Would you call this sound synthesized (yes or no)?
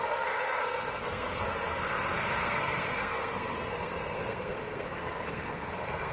yes